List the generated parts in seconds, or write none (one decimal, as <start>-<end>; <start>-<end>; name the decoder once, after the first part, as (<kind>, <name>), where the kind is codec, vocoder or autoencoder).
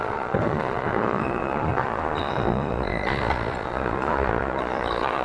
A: 0.0-5.2 (vocoder, Vocos)